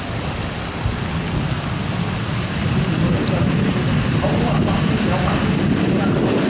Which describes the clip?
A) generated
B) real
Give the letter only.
B